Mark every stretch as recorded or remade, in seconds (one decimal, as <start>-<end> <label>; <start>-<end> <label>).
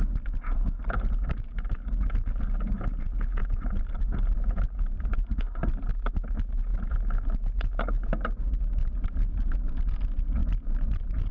0.0-3.4 recorded; 3.4-6.1 remade; 6.1-6.7 recorded; 6.7-7.6 remade; 7.6-8.8 recorded; 8.8-9.5 remade; 9.5-10.4 recorded; 10.4-11.3 remade